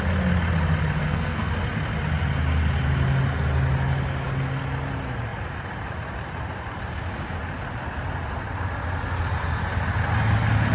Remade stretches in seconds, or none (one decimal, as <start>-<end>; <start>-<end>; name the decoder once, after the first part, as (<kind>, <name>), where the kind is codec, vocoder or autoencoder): 1.0-1.5 (codec, SNAC)